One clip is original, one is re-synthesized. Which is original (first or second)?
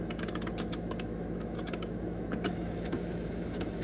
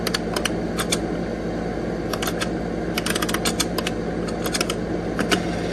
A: second